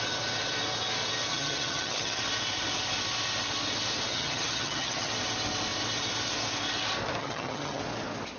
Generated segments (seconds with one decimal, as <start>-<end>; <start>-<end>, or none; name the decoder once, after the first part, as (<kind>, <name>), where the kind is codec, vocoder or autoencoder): 1.3-2.2 (vocoder, HiFi-GAN); 4.1-5.1; 7.2-7.8

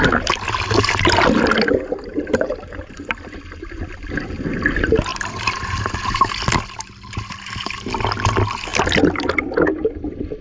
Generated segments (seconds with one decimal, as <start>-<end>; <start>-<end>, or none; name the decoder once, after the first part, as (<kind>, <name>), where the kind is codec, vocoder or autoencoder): 2.1-3.1 (vocoder, BigVGAN v2); 5.1-6.2

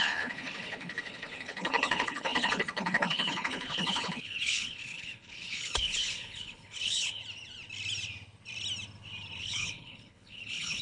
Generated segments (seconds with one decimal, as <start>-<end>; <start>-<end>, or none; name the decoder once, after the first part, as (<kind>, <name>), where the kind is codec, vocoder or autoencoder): 0.0-7.2 (codec, HILCodec); 9.4-10.8